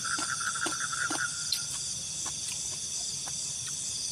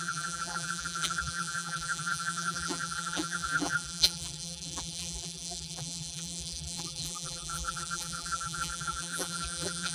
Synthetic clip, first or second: second